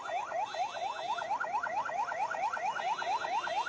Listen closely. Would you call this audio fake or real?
real